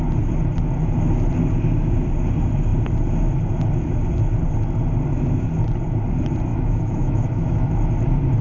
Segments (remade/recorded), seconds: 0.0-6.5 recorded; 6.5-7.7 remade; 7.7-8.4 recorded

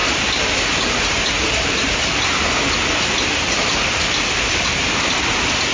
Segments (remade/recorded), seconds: 0.0-5.7 recorded

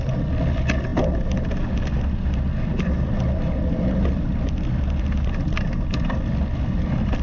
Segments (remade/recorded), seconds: 0.0-7.2 recorded

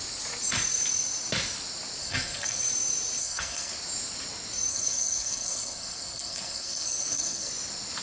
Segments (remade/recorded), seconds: 0.0-2.0 recorded; 2.0-2.6 remade; 2.6-3.2 recorded; 3.2-3.7 remade; 3.7-4.7 recorded; 4.7-7.5 remade; 7.5-8.0 recorded

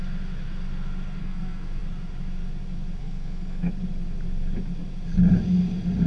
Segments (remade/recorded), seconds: 0.0-1.2 recorded; 1.2-1.8 remade; 1.8-3.0 recorded; 3.0-3.7 remade; 3.7-6.1 recorded

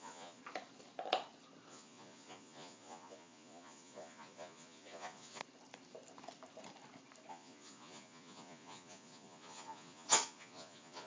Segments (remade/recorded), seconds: 0.0-0.4 remade; 0.4-1.7 recorded; 1.7-5.4 remade; 5.4-7.3 recorded; 7.3-11.1 remade

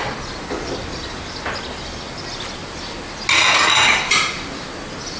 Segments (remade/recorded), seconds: 0.0-5.2 recorded

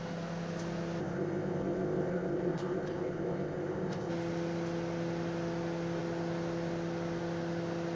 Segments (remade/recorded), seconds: 0.0-1.0 recorded; 1.0-4.1 remade; 4.1-8.0 recorded